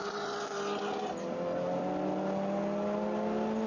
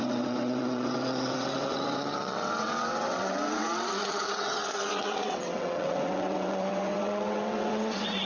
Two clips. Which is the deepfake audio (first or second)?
second